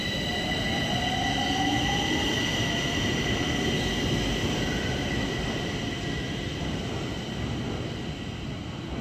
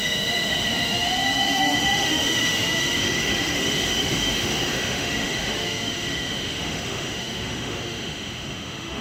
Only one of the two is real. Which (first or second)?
first